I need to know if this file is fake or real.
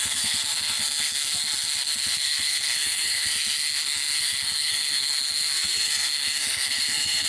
fake